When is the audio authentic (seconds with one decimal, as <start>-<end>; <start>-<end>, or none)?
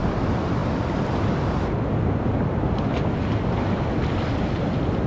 0.0-5.1